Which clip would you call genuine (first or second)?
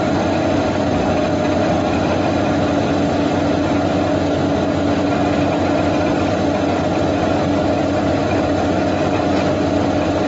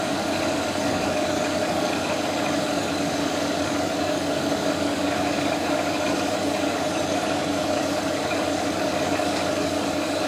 first